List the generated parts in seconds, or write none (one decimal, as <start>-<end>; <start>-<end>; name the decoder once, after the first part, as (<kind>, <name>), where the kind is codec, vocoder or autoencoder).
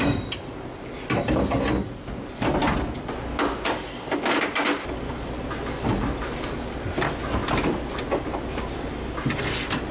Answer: none